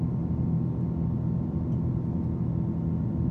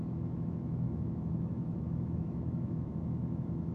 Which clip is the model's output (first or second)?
second